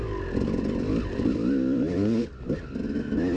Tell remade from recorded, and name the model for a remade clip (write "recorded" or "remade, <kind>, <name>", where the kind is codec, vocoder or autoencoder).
recorded